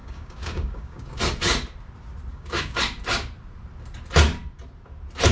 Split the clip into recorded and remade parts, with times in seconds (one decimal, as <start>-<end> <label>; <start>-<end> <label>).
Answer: 0.0-1.2 remade; 1.2-2.3 recorded; 2.3-2.8 remade; 2.8-5.3 recorded